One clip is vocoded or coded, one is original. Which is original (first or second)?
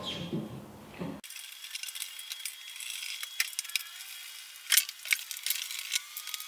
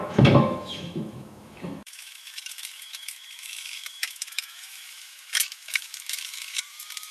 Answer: first